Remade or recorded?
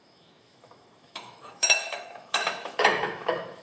remade